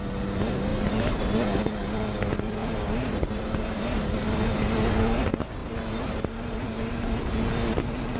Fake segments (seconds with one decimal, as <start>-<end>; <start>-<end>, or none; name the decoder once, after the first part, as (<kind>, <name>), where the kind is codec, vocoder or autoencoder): 0.7-1.2 (vocoder, BigVGAN v2); 2.6-4.5; 5.6-6.9